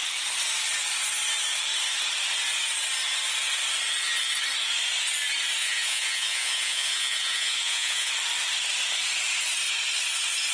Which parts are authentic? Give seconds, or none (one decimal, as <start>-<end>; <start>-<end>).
0.0-5.6; 8.1-10.5